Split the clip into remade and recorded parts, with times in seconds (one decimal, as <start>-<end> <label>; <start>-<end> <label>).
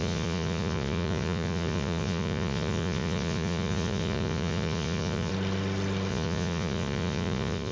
0.0-5.3 remade; 5.3-6.1 recorded; 6.1-7.7 remade